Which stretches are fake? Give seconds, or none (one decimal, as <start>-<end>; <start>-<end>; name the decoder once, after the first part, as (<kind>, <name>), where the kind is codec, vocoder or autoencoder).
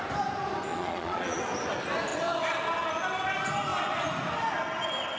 0.7-1.4 (vocoder, Vocos)